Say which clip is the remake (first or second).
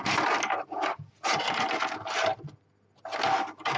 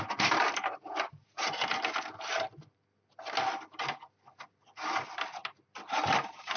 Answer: second